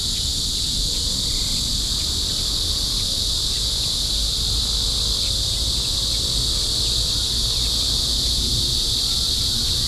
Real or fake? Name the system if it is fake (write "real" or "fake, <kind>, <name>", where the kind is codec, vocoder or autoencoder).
real